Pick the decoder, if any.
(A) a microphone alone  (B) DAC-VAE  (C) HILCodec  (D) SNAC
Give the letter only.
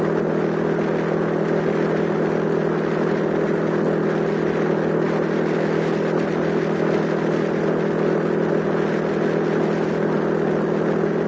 A